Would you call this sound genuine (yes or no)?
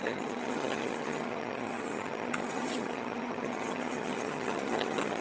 no